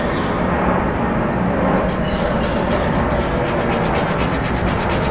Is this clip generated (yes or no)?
no